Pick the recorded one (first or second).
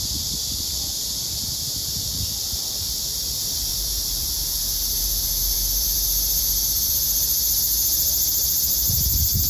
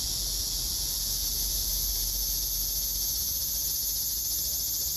second